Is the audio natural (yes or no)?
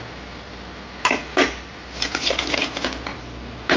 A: yes